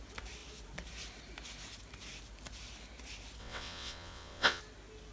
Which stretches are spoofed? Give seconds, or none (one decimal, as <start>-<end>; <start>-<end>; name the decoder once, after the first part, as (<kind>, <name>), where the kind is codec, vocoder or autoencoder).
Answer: 3.4-4.6 (vocoder, WaveNeXt)